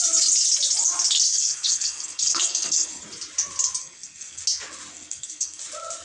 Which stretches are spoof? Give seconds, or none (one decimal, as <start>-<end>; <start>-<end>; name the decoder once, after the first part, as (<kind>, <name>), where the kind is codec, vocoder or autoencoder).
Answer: 1.3-3.0 (codec, SNAC); 3.8-4.4; 4.9-5.6